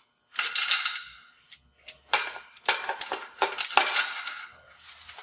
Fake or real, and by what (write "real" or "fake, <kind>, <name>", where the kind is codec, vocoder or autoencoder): real